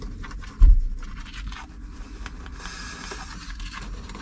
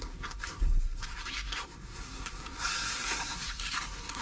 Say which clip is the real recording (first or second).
first